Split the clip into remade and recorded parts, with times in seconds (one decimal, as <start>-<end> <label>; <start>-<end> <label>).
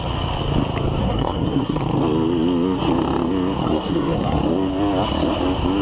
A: 0.0-1.0 recorded; 1.0-1.8 remade; 1.8-3.6 recorded; 3.6-4.4 remade; 4.4-5.8 recorded